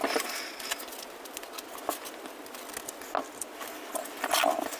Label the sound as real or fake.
real